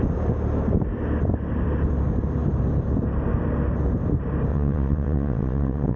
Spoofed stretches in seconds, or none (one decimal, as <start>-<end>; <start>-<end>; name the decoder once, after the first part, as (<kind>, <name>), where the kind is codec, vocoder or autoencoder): 4.5-6.0 (vocoder, WaveNeXt)